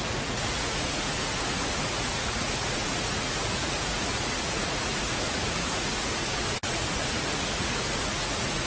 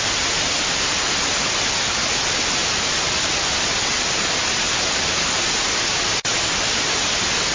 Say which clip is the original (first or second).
second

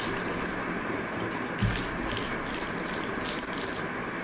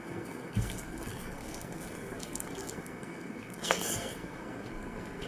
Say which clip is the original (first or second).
first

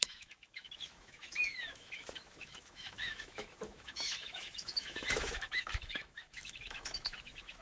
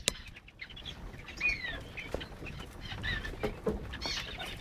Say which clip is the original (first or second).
second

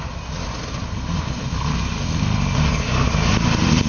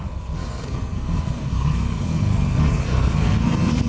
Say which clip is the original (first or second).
first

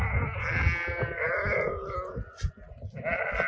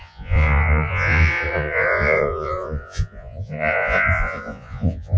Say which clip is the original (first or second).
first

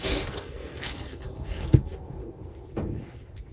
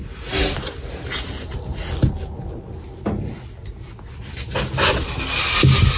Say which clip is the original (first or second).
second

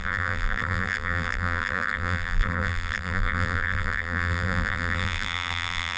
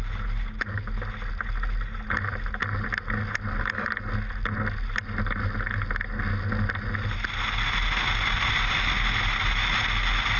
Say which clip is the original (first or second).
second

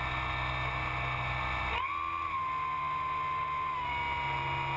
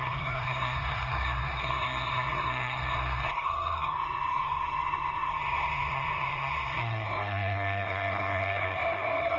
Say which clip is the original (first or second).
first